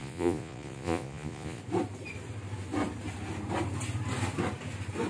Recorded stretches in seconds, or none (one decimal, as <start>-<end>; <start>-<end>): 1.6-5.1